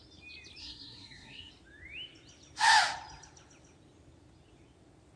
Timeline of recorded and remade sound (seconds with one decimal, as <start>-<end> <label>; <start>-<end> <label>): 0.0-0.6 recorded; 0.6-1.5 remade; 1.5-5.2 recorded